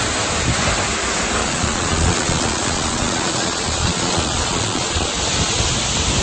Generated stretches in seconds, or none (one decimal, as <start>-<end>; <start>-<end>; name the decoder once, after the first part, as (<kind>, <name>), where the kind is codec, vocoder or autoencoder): 1.4-5.1 (vocoder, Vocos)